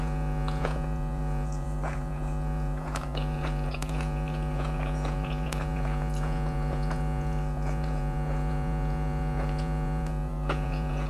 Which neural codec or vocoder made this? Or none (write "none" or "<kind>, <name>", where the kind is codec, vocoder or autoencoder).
vocoder, Vocos